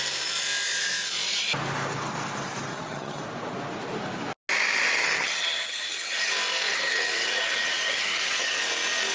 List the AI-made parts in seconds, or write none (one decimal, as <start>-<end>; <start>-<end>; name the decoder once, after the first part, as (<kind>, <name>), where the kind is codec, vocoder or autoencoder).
2.7-3.2 (vocoder, HiFi-GAN); 5.0-6.3; 6.7-8.6

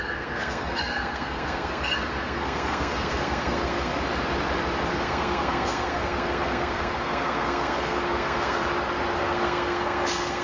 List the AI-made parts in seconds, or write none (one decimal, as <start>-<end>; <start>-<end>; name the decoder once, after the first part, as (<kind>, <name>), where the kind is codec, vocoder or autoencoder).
0.0-3.9 (codec, SNAC); 4.9-8.6; 9.2-10.4

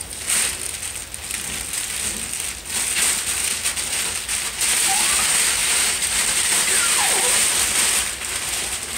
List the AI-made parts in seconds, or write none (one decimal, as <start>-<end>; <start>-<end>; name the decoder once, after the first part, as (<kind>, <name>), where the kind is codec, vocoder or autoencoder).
5.6-7.5 (vocoder, BigVGAN v2)

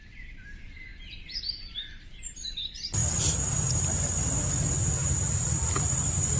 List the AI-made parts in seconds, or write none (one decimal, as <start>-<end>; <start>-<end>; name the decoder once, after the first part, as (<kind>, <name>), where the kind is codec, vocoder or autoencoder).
0.0-0.9 (vocoder, BigVGAN v2); 1.4-3.0; 5.8-6.4

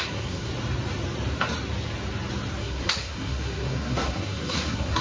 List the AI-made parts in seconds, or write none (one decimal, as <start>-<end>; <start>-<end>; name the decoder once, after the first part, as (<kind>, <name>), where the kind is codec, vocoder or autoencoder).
0.0-0.5 (codec, SNAC); 2.6-5.0

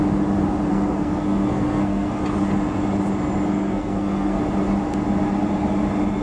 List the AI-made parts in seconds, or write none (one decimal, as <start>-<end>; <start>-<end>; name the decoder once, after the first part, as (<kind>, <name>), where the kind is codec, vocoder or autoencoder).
0.7-2.2 (codec, SNAC); 3.5-4.4

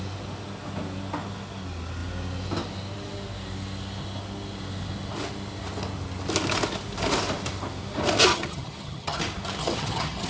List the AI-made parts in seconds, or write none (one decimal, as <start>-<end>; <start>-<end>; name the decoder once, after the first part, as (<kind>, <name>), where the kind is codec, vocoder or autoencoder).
8.3-9.2 (vocoder, HiFi-GAN); 9.6-10.3